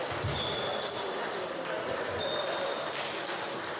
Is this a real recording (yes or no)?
yes